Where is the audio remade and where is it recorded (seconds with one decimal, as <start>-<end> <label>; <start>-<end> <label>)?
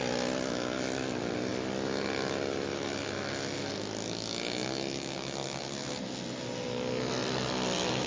0.0-8.1 recorded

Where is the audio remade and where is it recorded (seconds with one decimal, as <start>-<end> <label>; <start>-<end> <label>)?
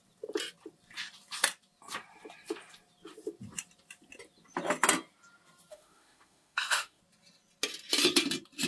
0.0-5.7 recorded; 5.7-7.0 remade; 7.0-8.7 recorded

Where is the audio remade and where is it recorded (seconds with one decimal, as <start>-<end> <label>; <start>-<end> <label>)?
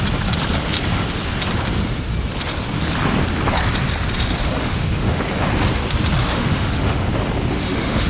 0.0-4.6 recorded; 4.6-5.2 remade; 5.2-6.2 recorded; 6.2-7.1 remade; 7.1-7.5 recorded; 7.5-8.1 remade